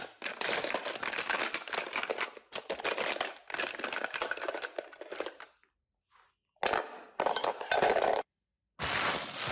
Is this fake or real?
real